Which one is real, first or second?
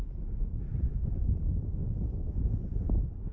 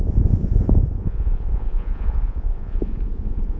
first